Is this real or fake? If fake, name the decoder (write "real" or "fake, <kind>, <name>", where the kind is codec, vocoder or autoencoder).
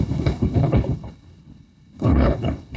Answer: fake, codec, HILCodec